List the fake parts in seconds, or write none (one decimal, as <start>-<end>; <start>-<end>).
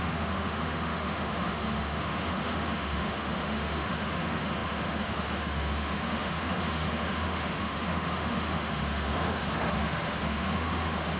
0.0-11.2